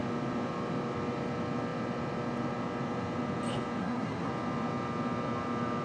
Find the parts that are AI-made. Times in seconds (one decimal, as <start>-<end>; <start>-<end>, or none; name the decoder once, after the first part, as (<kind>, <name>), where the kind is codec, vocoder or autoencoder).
3.8-4.3 (codec, SNAC)